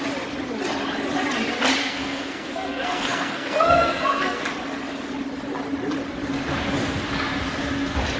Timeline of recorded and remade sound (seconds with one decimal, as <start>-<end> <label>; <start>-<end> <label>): 0.0-1.8 recorded; 1.8-4.4 remade; 4.4-8.2 recorded